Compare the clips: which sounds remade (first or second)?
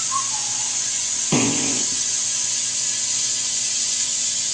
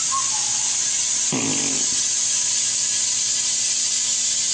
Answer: first